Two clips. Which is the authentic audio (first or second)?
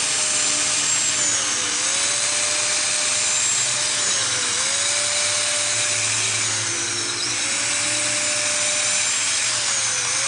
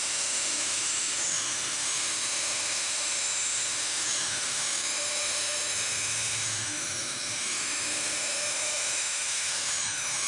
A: first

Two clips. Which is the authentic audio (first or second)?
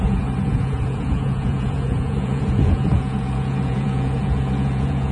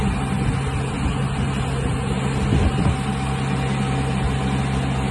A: second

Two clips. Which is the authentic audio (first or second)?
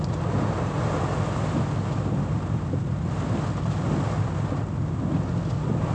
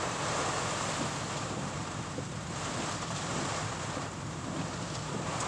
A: first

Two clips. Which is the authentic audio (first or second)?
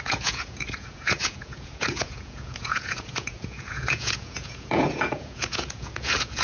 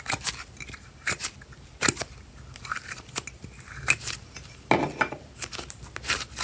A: second